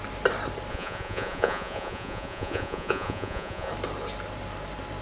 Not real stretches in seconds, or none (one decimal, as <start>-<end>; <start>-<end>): 0.7-3.7